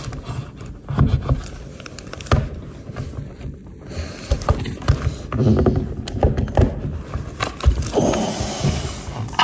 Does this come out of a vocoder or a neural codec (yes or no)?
no